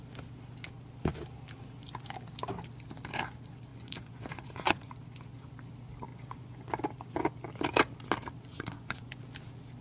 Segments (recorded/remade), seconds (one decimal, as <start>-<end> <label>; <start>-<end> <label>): 0.0-3.7 recorded; 3.7-4.9 remade; 4.9-6.1 recorded; 6.1-6.7 remade; 6.7-8.5 recorded; 8.5-9.2 remade; 9.2-9.8 recorded